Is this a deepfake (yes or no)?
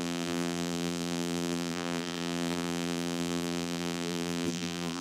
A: yes